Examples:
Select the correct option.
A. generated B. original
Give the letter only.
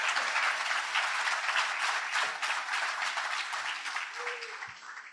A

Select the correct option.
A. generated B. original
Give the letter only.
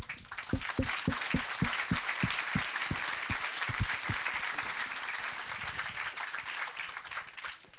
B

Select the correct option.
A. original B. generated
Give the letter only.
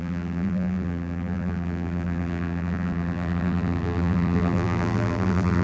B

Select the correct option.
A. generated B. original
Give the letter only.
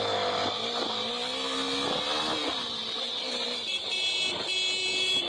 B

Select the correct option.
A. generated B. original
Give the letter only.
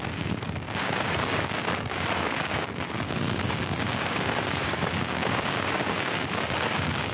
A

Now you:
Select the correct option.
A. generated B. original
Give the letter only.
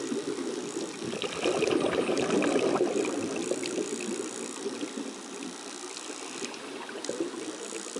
B